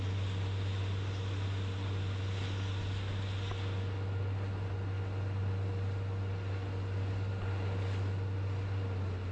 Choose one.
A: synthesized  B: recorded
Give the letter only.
B